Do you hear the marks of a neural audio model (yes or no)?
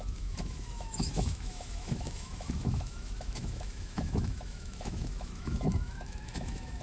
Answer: yes